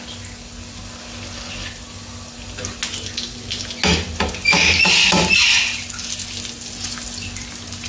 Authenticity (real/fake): real